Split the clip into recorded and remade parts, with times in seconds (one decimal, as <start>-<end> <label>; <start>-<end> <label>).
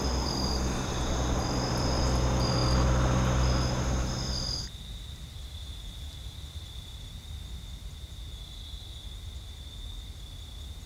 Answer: 0.0-2.6 remade; 2.6-4.6 recorded; 4.6-10.9 remade